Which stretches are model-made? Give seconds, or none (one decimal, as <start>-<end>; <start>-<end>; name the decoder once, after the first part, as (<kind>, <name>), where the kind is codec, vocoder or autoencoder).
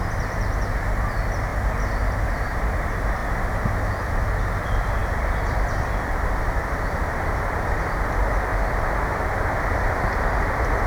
0.0-1.5 (vocoder, BigVGAN v2); 2.3-3.2; 3.9-8.5; 9.5-10.9